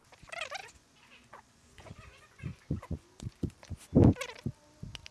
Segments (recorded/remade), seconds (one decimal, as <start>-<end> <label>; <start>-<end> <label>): 0.0-0.6 recorded; 0.6-3.7 remade; 3.7-5.1 recorded